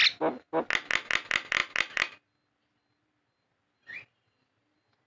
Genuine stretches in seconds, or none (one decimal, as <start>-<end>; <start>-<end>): 0.0-5.1